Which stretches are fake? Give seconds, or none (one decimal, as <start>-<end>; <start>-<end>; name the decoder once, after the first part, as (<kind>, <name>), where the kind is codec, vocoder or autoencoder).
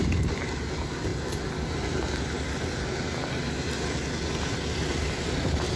none